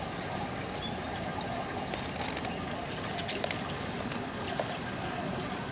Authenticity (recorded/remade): recorded